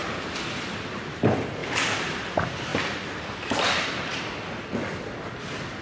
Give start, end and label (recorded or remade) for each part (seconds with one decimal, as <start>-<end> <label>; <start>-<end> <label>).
0.0-1.6 recorded; 1.6-2.2 remade; 2.2-5.8 recorded